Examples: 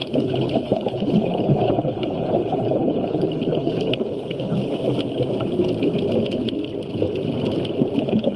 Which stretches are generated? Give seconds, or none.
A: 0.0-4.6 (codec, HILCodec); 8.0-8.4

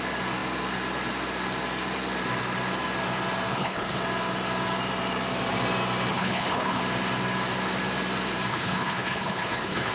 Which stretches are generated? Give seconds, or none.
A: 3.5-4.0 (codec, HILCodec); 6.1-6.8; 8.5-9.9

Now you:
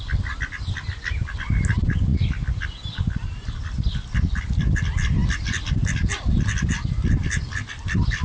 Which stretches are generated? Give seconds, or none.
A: none

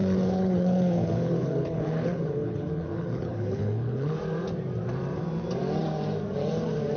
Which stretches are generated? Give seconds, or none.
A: 0.0-4.2 (codec, HILCodec)